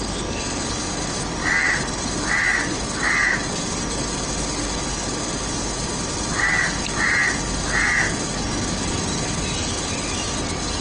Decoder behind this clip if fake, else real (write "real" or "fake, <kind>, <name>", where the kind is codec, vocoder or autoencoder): real